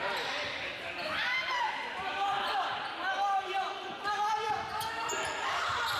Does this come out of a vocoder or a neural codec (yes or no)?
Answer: no